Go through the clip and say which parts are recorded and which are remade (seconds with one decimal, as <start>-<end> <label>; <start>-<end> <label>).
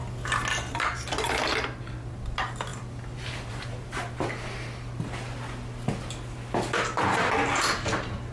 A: 0.0-8.3 recorded